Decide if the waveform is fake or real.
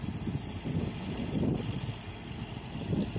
real